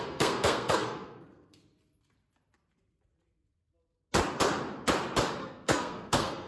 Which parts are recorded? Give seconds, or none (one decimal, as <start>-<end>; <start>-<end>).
1.6-5.4